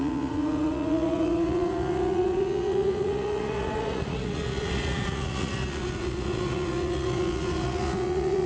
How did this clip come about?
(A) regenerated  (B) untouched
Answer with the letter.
A